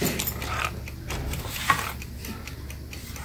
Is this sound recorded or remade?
recorded